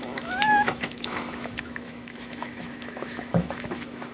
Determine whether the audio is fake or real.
fake